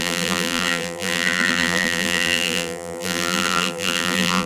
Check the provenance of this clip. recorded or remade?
remade